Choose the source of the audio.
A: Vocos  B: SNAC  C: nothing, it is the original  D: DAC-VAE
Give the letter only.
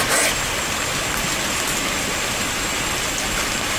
C